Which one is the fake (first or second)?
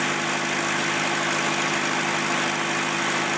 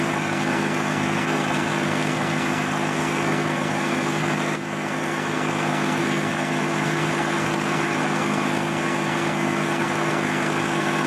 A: second